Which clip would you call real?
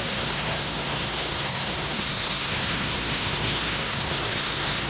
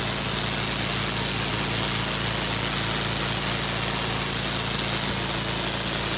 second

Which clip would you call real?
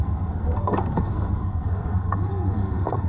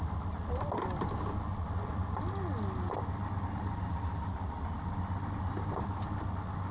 second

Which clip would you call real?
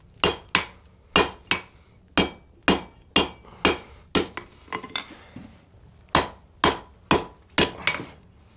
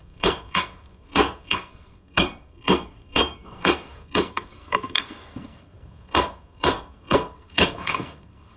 first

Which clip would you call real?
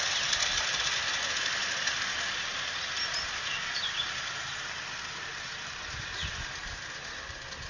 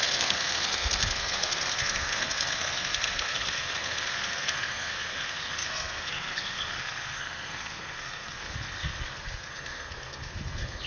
first